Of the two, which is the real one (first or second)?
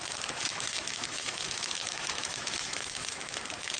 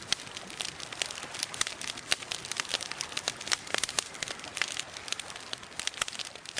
second